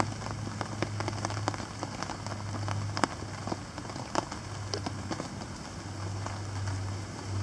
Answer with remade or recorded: recorded